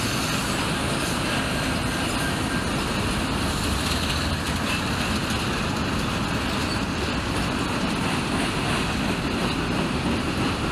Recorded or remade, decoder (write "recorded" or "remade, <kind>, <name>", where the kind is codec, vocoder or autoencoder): recorded